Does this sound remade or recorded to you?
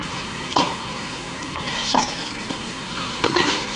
remade